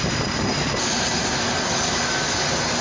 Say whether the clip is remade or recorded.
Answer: recorded